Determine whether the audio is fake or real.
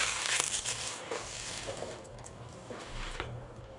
fake